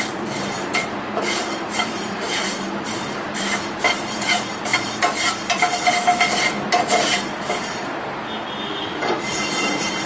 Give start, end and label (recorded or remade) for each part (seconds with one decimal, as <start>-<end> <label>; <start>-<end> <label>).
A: 0.0-4.7 remade; 4.7-8.7 recorded; 8.7-10.1 remade